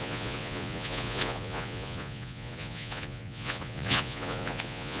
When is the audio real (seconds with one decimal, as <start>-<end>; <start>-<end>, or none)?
none